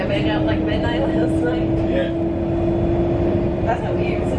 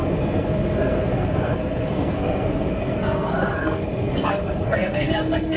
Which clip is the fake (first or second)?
second